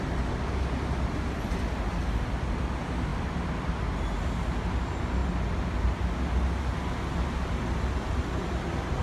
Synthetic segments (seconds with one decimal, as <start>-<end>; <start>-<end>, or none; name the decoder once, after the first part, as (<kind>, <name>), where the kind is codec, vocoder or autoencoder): none